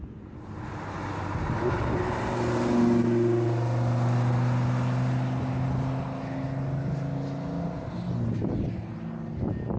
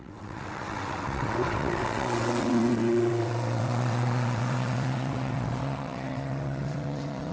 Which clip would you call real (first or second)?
first